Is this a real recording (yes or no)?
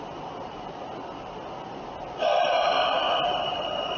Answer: yes